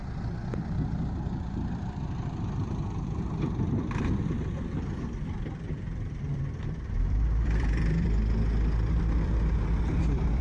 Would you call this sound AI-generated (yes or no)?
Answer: yes